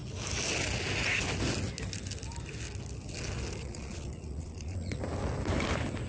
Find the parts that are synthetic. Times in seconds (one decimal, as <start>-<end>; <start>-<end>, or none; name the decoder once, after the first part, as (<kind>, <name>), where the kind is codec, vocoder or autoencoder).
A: 3.6-5.0 (vocoder, Vocos)